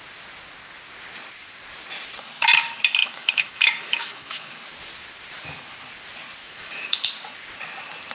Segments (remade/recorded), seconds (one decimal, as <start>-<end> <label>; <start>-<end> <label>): 0.0-3.0 recorded; 3.0-4.5 remade; 4.5-6.4 recorded; 6.4-7.0 remade; 7.0-8.1 recorded